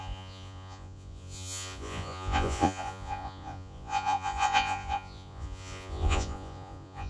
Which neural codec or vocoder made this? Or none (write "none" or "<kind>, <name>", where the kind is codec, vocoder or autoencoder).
vocoder, Vocos